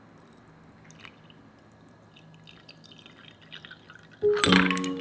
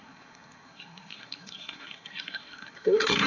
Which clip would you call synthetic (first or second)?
second